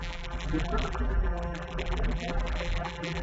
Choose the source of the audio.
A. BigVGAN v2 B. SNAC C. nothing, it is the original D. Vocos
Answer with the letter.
A